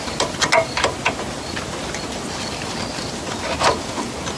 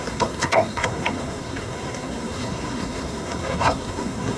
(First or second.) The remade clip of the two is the second